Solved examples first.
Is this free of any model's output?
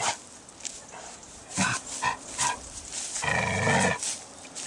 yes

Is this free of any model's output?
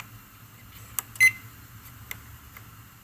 yes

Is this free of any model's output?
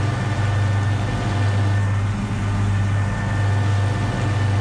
yes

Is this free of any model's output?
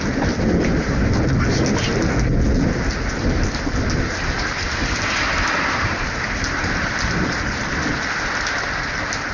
yes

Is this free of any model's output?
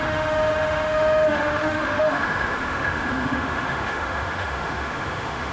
no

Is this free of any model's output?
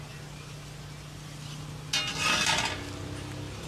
yes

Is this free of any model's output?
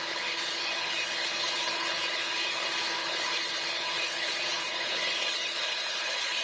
no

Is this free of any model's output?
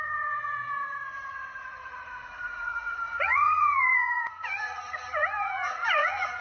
no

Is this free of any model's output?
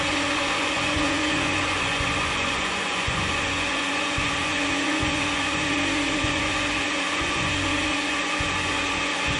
no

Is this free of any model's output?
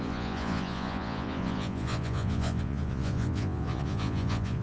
no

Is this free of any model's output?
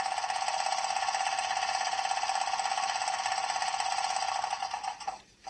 yes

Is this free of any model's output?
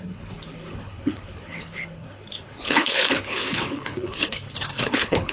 no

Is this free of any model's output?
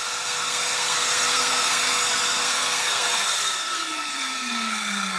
no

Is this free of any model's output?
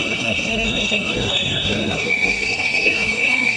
no